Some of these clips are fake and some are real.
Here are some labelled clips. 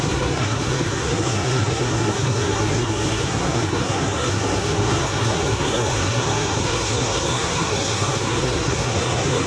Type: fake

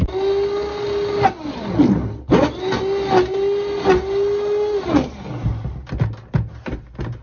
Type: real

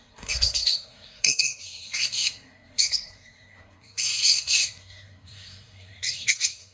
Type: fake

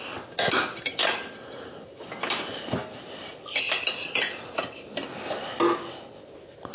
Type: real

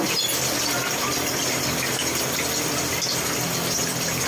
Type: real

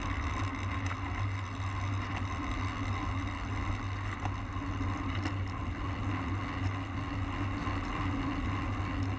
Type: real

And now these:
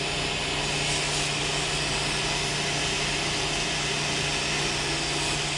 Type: real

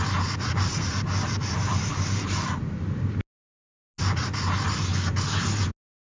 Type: real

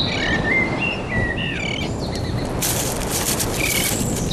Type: fake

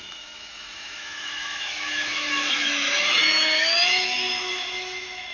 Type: fake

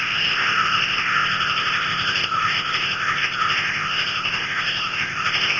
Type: fake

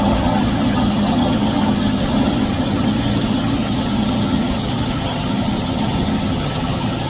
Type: fake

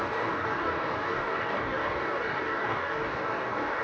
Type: fake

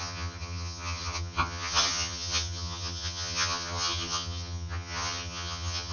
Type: fake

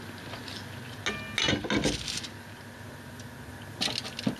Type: real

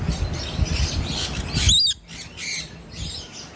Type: real